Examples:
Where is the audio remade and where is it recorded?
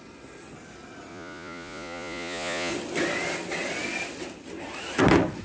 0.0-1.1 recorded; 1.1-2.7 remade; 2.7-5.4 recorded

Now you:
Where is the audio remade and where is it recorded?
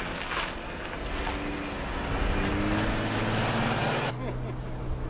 0.0-5.1 recorded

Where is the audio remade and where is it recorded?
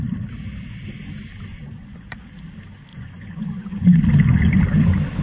0.0-1.5 recorded; 1.5-2.2 remade; 2.2-2.9 recorded; 2.9-4.0 remade; 4.0-5.2 recorded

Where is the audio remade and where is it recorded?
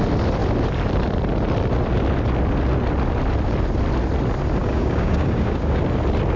0.0-4.6 recorded; 4.6-5.8 remade; 5.8-6.4 recorded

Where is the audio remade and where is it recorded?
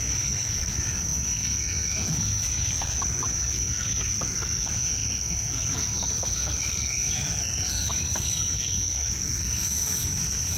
0.0-10.6 remade